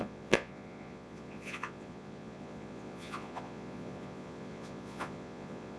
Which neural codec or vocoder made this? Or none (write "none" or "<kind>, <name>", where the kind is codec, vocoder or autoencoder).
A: vocoder, Vocos